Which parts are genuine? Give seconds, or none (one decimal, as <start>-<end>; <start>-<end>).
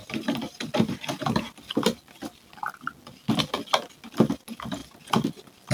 3.4-5.7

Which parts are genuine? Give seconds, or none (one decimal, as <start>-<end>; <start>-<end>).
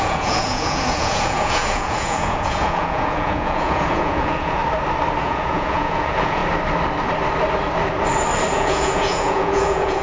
4.6-5.2; 6.4-8.5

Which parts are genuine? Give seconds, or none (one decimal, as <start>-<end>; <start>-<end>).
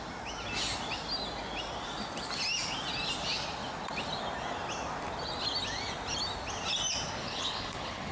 0.0-7.2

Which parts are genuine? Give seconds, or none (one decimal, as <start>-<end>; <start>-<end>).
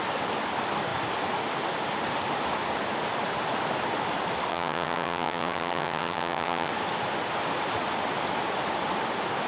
0.0-4.5; 6.7-9.5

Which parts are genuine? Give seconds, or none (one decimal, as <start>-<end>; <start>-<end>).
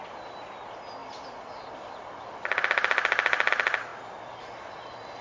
0.0-5.2